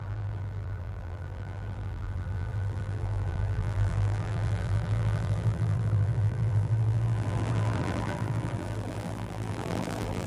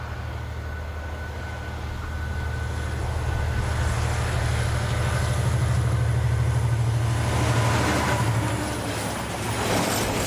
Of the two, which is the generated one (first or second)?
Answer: first